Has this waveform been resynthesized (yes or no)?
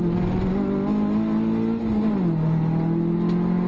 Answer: no